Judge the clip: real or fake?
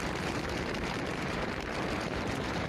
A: fake